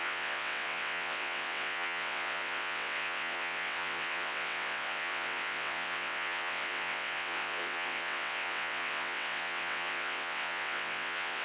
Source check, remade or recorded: remade